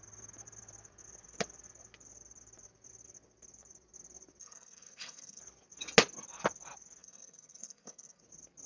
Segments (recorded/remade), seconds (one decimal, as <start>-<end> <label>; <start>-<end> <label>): 0.0-4.4 recorded; 4.4-5.4 remade; 5.4-7.0 recorded; 7.0-8.2 remade; 8.2-8.7 recorded